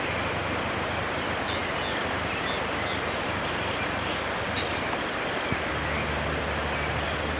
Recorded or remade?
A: recorded